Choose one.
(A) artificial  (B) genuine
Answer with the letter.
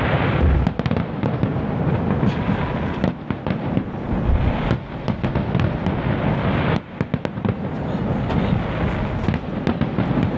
B